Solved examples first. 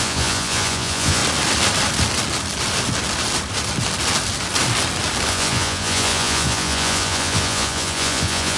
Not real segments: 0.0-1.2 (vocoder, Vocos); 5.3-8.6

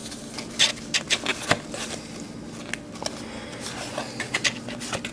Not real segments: none

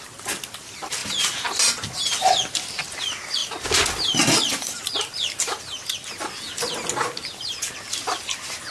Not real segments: none

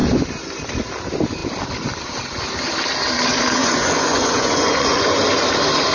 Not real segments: 3.6-5.2 (vocoder, Vocos)